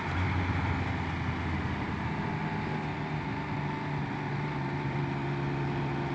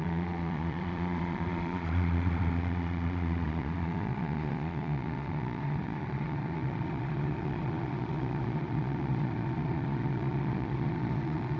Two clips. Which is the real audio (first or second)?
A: first